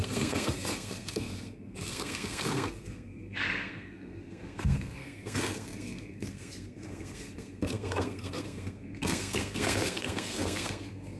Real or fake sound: fake